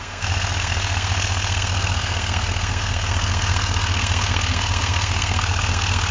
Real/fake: fake